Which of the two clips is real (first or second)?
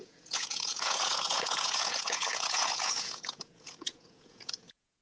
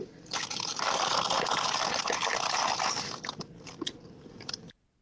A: second